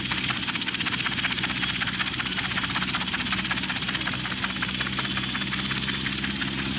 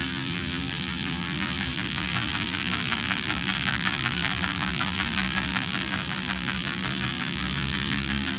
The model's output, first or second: second